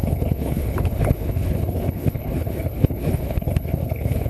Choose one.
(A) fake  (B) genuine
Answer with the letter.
A